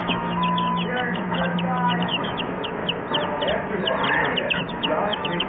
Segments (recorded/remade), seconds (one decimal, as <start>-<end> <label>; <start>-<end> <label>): 0.0-2.8 remade; 2.8-4.5 recorded; 4.5-5.5 remade